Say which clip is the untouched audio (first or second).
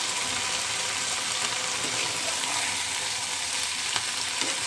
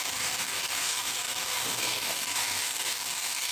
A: first